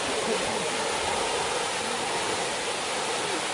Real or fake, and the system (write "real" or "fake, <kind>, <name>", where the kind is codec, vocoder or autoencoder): real